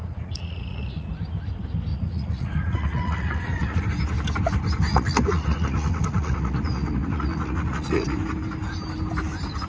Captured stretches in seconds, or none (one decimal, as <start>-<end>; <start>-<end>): 1.1-1.9; 3.8-4.9; 8.2-9.7